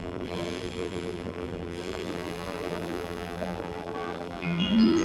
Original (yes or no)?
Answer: no